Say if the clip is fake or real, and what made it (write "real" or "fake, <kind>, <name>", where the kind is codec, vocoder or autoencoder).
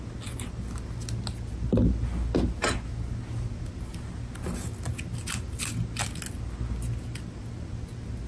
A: real